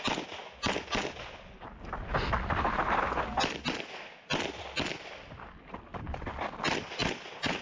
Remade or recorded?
recorded